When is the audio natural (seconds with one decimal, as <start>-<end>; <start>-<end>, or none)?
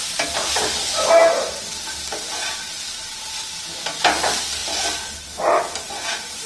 0.0-6.5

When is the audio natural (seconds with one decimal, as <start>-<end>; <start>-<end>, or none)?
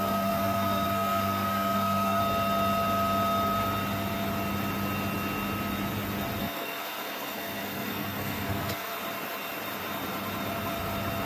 2.2-6.4; 8.9-11.3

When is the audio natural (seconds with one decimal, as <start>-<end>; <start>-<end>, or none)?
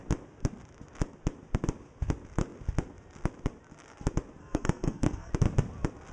0.0-4.4; 5.3-6.1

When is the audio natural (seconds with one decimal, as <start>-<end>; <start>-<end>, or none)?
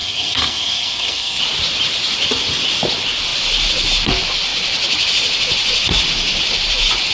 1.4-7.1